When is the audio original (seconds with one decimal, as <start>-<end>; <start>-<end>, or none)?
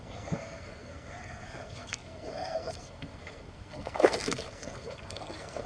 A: none